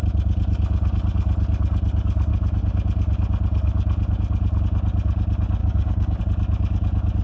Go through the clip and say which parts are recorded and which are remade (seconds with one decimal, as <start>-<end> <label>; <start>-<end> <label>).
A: 0.0-5.6 recorded; 5.6-6.2 remade; 6.2-7.2 recorded